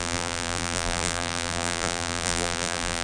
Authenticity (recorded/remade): remade